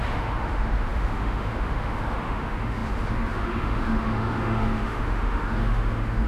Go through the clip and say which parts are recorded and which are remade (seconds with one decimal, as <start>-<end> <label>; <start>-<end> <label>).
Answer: 0.0-6.3 remade